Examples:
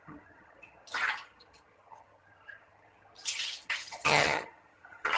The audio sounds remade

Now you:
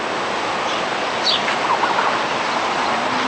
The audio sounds recorded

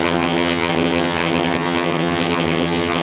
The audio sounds remade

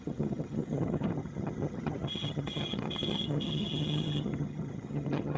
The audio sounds remade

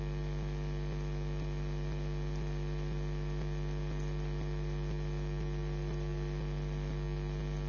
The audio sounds recorded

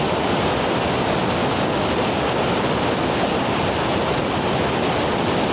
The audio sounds recorded